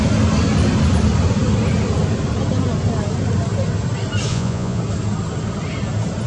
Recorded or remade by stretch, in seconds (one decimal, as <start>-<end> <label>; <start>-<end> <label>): 0.0-4.3 recorded; 4.3-4.8 remade; 4.8-6.3 recorded

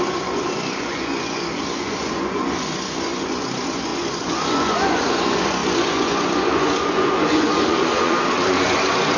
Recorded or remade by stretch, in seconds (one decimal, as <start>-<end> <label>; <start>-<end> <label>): 0.0-9.2 remade

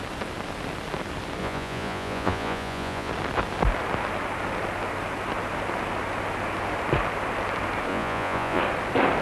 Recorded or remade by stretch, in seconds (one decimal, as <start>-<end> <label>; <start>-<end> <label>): 0.0-1.4 recorded; 1.4-3.1 remade; 3.1-7.9 recorded; 7.9-8.6 remade; 8.6-9.2 recorded

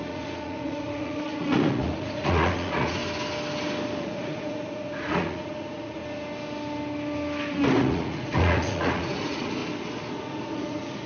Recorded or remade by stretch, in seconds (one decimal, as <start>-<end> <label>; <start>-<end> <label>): 0.0-3.0 remade; 3.0-4.0 recorded; 4.0-6.0 remade; 6.0-7.8 recorded; 7.8-9.6 remade; 9.6-10.1 recorded; 10.1-11.1 remade

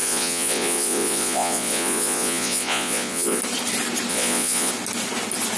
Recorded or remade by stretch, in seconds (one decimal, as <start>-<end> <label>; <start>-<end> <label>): 0.0-3.4 remade; 3.4-4.1 recorded; 4.1-4.7 remade; 4.7-5.6 recorded

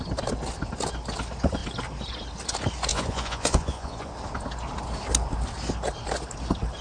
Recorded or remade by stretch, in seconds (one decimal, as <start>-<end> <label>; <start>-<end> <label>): 0.0-2.9 recorded; 2.9-4.1 remade; 4.1-6.8 recorded

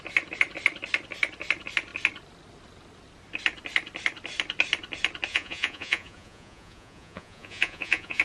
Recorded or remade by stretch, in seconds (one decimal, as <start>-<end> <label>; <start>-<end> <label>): 0.0-5.3 recorded; 5.3-8.2 remade

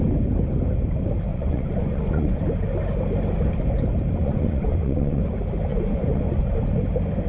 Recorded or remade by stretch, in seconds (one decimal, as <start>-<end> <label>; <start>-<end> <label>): 0.0-1.3 recorded; 1.3-2.4 remade; 2.4-4.2 recorded; 4.2-5.2 remade; 5.2-5.7 recorded; 5.7-6.4 remade; 6.4-7.3 recorded